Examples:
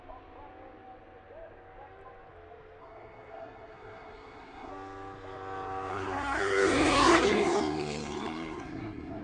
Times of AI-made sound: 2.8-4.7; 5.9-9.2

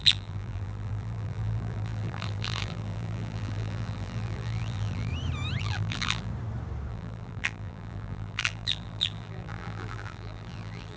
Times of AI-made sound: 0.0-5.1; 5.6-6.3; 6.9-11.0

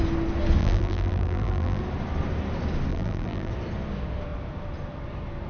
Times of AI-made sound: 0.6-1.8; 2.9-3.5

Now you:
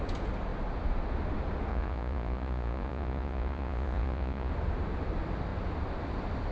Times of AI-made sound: 1.7-4.5

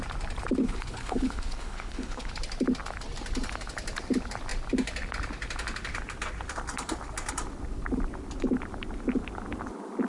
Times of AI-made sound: 0.6-2.3

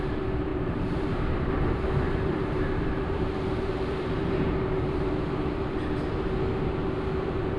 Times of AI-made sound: 0.5-5.1

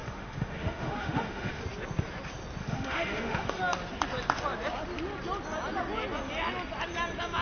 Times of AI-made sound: 0.0-1.6; 2.6-3.6